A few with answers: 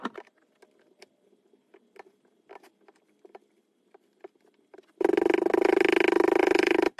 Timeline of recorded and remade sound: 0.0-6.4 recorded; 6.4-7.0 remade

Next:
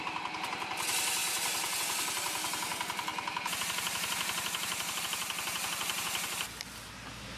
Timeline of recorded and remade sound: 0.0-7.4 recorded

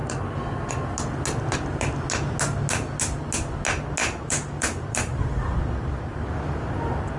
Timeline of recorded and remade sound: 0.0-4.0 recorded; 4.0-5.6 remade; 5.6-7.2 recorded

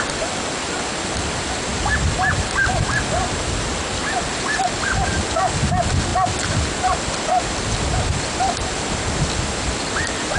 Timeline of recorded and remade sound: 0.0-10.4 recorded